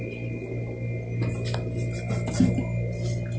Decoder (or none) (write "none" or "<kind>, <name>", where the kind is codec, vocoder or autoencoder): none